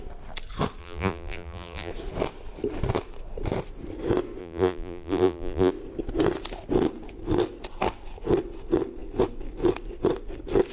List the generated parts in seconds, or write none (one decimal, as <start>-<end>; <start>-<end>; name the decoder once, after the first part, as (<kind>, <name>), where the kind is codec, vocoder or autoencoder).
0.8-1.9 (vocoder, BigVGAN v2); 4.4-5.7